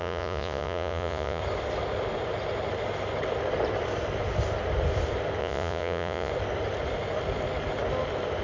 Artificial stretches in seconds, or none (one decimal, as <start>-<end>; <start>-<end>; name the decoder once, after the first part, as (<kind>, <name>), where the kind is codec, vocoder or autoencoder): 0.0-1.4 (vocoder, Vocos); 5.4-6.3